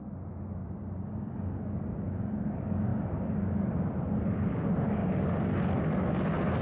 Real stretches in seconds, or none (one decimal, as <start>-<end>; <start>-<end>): 0.0-0.6; 1.6-2.9; 4.2-5.0; 5.8-6.6